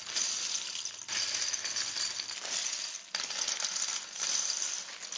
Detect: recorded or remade recorded